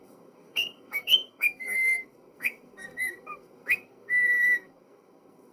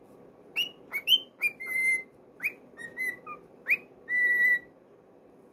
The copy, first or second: first